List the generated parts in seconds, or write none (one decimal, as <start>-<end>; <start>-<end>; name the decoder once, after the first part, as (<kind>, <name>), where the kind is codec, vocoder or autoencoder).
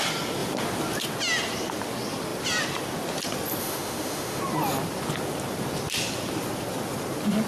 3.6-4.4 (autoencoder, DAC-VAE)